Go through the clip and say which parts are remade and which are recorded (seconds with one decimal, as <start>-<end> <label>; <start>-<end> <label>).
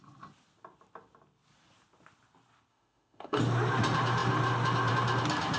0.0-2.7 recorded; 2.7-3.4 remade; 3.4-5.6 recorded